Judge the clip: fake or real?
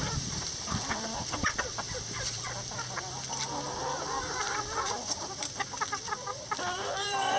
fake